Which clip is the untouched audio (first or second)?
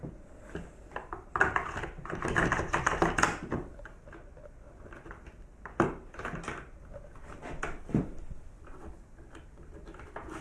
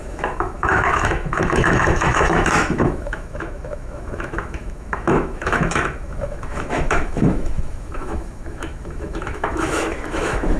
first